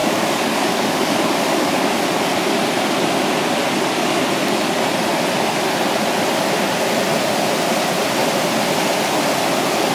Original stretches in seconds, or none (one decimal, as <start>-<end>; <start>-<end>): 2.0-3.6; 4.2-9.9